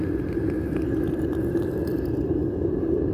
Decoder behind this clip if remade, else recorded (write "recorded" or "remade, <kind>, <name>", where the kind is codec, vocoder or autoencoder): recorded